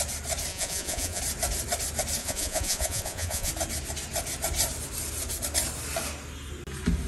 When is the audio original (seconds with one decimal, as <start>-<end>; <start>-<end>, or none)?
0.0-0.5; 1.2-2.2; 3.5-7.1